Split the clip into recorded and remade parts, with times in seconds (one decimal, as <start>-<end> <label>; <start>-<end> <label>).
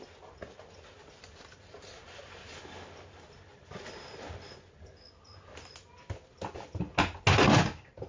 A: 0.0-8.1 recorded